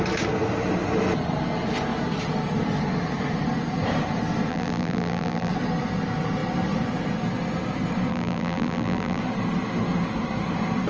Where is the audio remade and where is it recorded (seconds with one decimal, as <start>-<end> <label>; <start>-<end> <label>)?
0.0-4.5 recorded; 4.5-5.5 remade; 5.5-8.1 recorded; 8.1-9.2 remade; 9.2-10.9 recorded